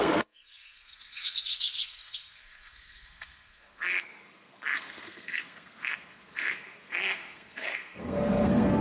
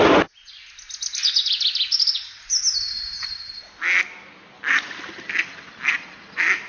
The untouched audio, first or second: second